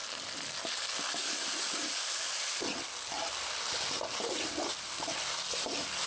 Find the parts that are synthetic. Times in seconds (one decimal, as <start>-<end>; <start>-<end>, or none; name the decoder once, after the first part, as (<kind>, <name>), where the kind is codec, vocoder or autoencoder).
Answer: none